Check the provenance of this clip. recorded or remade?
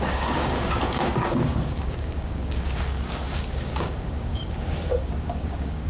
remade